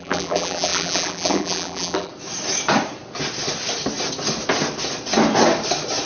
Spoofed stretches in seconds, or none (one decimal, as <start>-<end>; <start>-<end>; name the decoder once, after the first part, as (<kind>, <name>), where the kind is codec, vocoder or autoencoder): 0.0-2.1 (vocoder, BigVGAN v2)